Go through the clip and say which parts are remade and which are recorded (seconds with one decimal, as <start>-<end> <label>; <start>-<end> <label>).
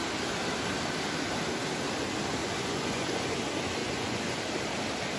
0.0-2.4 recorded; 2.4-3.4 remade; 3.4-3.8 recorded; 3.8-4.4 remade; 4.4-5.2 recorded